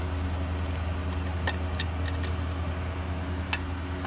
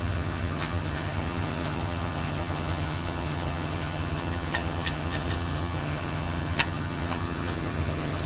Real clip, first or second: first